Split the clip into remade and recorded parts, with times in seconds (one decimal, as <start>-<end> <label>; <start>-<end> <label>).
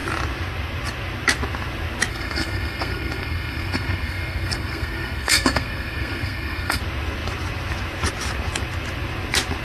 0.0-2.1 recorded; 2.1-6.8 remade; 6.8-9.6 recorded